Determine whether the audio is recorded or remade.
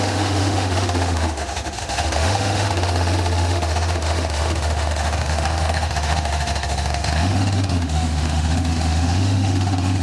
remade